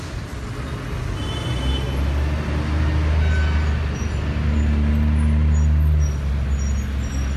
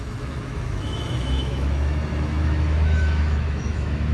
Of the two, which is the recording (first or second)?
first